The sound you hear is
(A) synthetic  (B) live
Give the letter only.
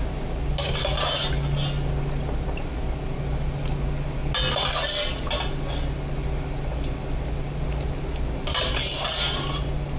B